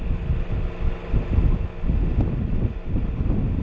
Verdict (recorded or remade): recorded